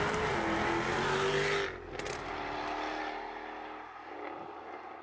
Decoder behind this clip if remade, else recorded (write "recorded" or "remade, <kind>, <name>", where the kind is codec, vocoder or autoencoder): recorded